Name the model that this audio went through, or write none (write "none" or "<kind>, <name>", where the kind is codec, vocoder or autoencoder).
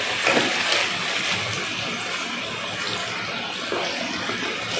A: none